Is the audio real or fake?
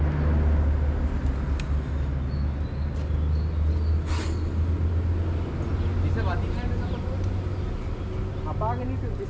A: real